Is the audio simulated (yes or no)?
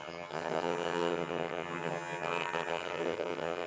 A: yes